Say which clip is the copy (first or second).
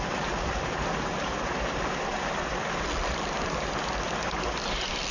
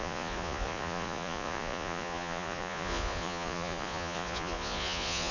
second